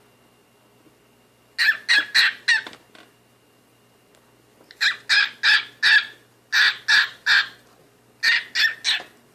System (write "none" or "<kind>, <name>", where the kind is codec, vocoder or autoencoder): none